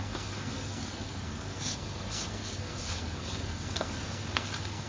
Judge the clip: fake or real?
fake